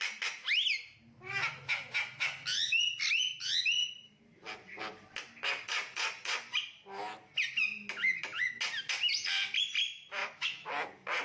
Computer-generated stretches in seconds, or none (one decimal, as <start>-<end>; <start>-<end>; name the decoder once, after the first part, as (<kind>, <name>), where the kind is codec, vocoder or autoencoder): 10.2-10.7 (autoencoder, DAC-VAE)

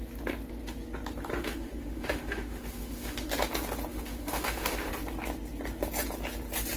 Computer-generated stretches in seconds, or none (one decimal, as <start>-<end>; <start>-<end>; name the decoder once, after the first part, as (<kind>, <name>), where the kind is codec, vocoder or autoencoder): 1.3-3.3 (autoencoder, DAC-VAE); 3.9-4.9

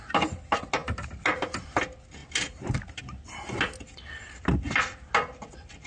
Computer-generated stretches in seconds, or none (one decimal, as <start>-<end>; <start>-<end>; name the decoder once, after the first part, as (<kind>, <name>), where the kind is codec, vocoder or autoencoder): none

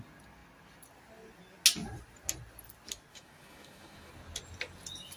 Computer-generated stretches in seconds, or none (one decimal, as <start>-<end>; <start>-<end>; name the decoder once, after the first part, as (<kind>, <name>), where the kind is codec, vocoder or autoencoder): 3.1-4.1 (autoencoder, DAC-VAE)

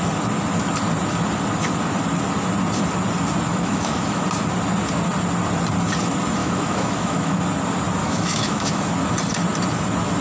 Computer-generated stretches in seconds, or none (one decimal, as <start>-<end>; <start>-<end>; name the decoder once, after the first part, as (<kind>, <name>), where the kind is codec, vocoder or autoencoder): 3.5-4.2 (autoencoder, DAC-VAE); 6.4-7.4; 8.0-8.8

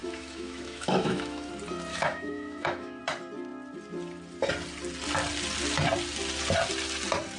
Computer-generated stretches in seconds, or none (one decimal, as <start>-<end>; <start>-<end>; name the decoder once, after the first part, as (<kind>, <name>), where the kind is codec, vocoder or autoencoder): 0.0-1.5 (autoencoder, DAC-VAE); 1.9-3.0

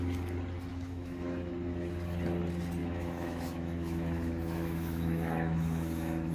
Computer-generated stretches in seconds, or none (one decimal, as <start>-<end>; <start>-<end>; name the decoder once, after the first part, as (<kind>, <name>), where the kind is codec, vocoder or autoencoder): 0.7-1.5 (autoencoder, DAC-VAE); 2.8-6.3

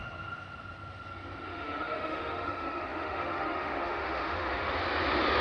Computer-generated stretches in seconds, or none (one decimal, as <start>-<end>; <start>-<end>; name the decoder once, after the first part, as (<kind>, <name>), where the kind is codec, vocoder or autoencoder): 1.5-4.7 (autoencoder, DAC-VAE)